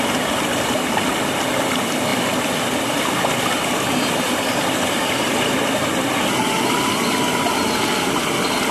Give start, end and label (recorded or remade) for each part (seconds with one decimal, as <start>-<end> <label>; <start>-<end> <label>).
0.0-8.7 recorded